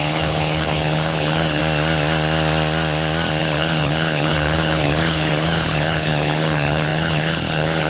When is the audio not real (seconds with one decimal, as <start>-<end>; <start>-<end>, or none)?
0.0-1.6; 3.4-7.9

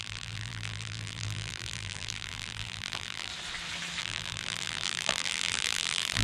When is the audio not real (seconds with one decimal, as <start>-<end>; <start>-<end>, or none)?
0.0-3.3; 4.0-6.2

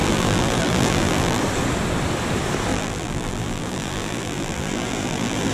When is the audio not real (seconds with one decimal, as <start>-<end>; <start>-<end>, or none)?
0.0-1.4; 2.7-5.5

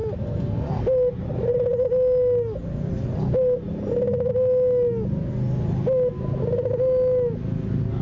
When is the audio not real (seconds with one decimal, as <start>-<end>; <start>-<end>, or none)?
none

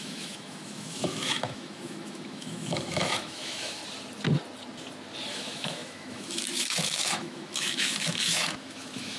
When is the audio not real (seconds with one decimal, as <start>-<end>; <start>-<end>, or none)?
0.0-3.8; 5.3-9.2

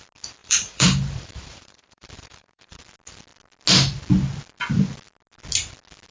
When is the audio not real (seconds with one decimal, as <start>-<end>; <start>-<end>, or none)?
0.4-2.8